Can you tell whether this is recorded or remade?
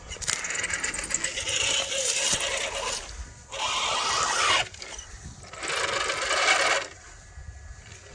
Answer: recorded